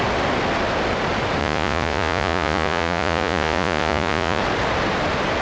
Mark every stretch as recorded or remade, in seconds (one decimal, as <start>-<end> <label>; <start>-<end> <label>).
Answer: 0.0-1.4 recorded; 1.4-4.4 remade; 4.4-5.4 recorded